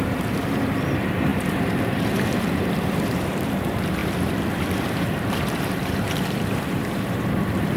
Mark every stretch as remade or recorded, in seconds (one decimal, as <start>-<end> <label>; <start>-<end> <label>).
0.0-4.0 remade; 4.0-4.6 recorded; 4.6-7.8 remade